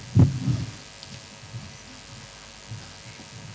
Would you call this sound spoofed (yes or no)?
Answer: no